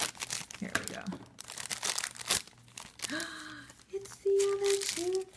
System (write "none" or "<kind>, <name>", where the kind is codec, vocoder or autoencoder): none